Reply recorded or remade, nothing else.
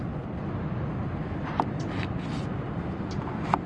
recorded